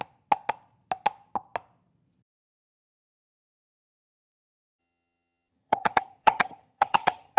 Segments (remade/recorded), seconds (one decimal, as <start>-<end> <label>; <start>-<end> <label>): 0.0-4.8 recorded; 4.8-7.4 remade